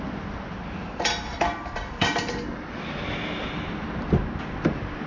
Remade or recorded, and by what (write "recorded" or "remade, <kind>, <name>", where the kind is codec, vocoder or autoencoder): recorded